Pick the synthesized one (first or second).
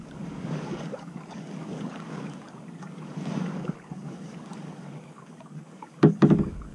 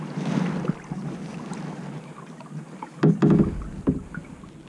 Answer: first